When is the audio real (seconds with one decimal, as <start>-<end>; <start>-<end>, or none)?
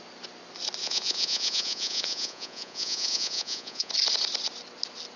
0.0-0.8; 3.9-5.2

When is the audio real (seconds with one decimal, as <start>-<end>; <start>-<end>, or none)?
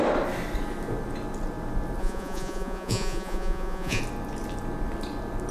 0.0-2.0; 4.0-5.5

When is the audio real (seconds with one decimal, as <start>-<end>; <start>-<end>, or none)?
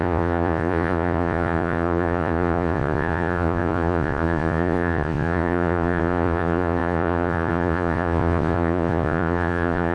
none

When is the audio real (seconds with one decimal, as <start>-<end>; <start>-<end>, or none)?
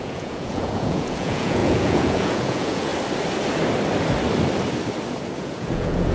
2.9-5.4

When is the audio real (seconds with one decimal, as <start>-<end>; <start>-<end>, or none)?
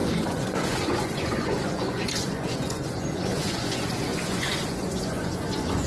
none